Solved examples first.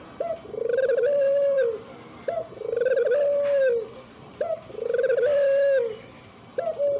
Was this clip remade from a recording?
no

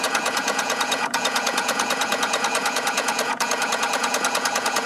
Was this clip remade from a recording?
yes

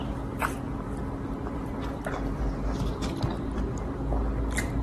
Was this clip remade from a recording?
no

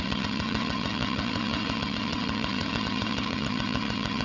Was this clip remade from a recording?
yes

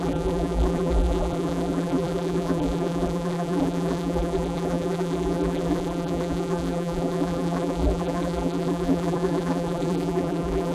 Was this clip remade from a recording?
yes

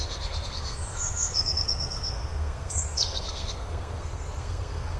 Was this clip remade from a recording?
yes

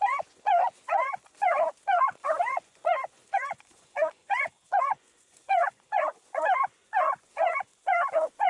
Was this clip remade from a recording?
yes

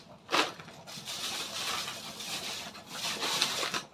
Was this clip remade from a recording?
no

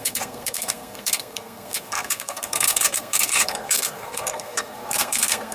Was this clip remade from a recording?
yes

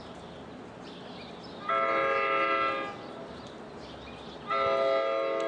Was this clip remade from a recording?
no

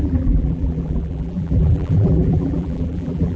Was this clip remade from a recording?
yes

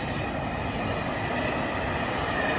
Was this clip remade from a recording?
no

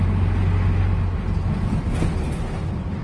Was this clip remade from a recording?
no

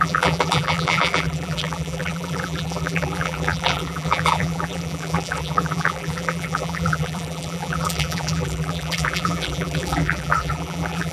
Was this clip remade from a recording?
yes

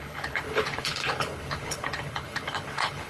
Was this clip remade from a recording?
yes